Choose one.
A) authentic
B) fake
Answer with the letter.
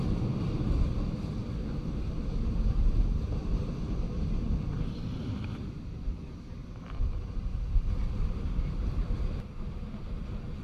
A